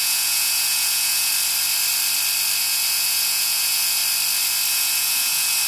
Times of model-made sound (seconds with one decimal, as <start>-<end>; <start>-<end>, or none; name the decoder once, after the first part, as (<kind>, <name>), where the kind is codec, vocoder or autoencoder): 0.0-1.3 (vocoder, Vocos); 2.6-4.0; 4.7-5.7